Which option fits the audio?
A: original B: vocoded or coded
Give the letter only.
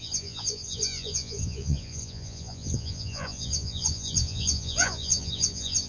B